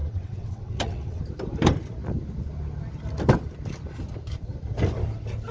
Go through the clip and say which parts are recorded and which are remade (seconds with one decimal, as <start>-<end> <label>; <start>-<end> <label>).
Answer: 0.0-1.2 remade; 1.2-5.5 recorded